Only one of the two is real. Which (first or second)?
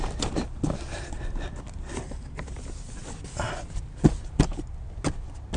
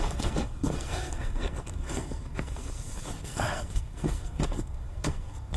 first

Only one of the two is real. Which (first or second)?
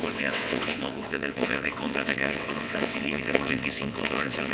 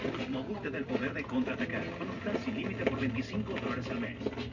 second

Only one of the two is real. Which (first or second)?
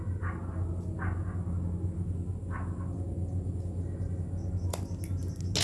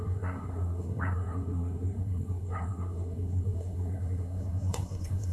first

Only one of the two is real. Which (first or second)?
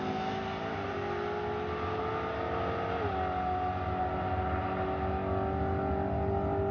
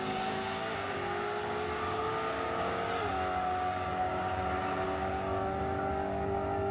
first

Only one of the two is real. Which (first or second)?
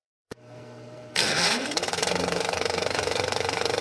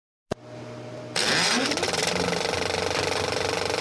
second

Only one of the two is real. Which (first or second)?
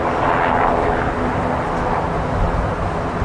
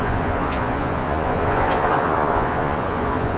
first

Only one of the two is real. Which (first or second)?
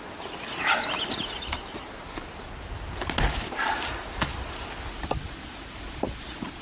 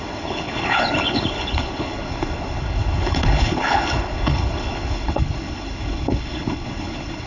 first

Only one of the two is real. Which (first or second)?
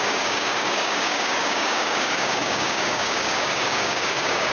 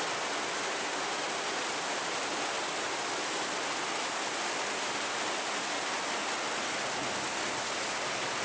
second